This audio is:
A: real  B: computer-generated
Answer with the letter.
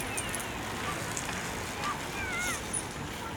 A